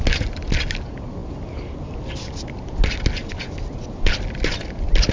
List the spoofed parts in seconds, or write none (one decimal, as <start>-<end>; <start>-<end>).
none